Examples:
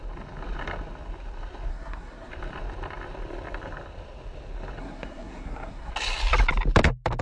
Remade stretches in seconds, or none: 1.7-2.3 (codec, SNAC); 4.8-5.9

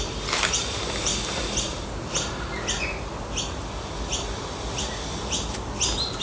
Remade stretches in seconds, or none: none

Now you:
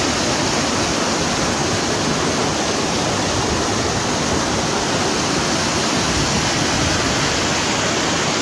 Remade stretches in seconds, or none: none